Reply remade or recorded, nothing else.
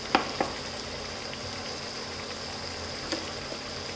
recorded